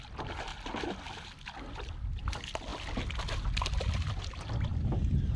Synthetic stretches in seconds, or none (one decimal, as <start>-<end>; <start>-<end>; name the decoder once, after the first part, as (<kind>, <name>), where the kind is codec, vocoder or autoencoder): none